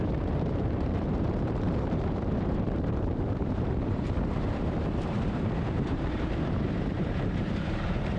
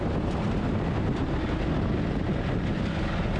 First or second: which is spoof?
first